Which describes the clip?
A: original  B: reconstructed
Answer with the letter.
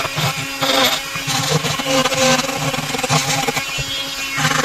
A